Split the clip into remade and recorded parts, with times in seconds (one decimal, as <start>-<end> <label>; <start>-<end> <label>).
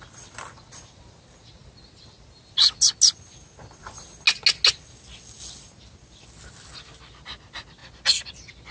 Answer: 0.0-8.7 recorded